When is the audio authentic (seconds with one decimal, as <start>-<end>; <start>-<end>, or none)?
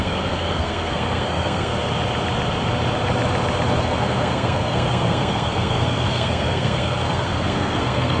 1.7-3.8